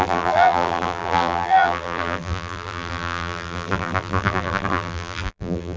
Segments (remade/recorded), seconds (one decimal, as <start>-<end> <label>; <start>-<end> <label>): 0.0-5.8 remade